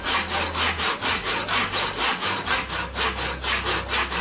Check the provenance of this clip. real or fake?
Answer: real